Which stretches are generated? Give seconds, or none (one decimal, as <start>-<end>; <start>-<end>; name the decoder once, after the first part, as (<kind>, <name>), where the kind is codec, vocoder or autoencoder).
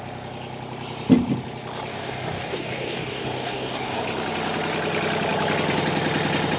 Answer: 1.9-4.0 (codec, DAC)